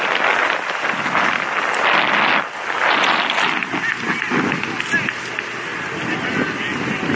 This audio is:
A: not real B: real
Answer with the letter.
B